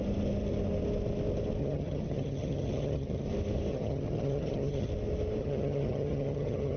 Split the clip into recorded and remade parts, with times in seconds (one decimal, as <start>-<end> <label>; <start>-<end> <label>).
0.0-1.6 recorded; 1.6-3.3 remade; 3.3-3.7 recorded; 3.7-4.9 remade; 4.9-5.4 recorded; 5.4-6.8 remade